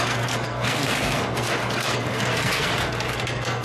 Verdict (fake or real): fake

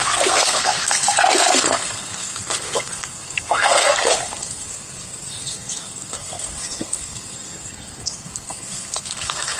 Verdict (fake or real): fake